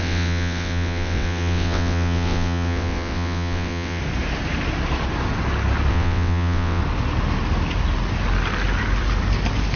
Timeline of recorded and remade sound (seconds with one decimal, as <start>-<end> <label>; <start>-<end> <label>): 0.0-4.0 remade; 4.0-5.9 recorded; 5.9-6.8 remade; 6.8-9.8 recorded